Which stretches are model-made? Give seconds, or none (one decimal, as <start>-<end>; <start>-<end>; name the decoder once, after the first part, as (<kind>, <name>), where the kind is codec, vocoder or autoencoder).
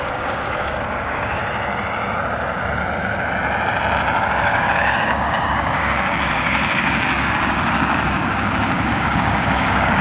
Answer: 0.0-1.4 (codec, DAC); 4.2-10.0